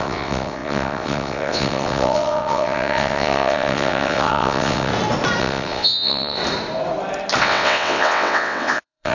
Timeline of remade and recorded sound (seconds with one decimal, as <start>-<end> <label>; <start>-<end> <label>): 0.0-4.9 remade; 4.9-5.4 recorded; 5.4-6.4 remade; 6.4-7.4 recorded; 7.4-9.1 remade

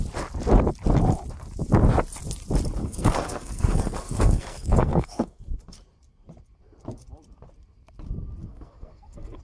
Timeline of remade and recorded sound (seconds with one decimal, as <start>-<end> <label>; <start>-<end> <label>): 0.0-2.8 recorded; 2.8-5.4 remade; 5.4-8.4 recorded; 8.4-9.4 remade

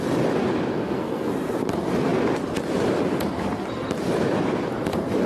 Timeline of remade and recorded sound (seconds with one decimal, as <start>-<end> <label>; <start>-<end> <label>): 0.0-0.7 recorded; 0.7-1.3 remade; 1.3-5.3 recorded

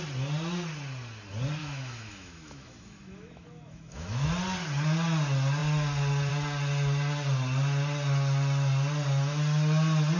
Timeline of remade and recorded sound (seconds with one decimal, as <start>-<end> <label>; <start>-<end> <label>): 0.0-1.6 recorded; 1.6-4.3 remade; 4.3-10.2 recorded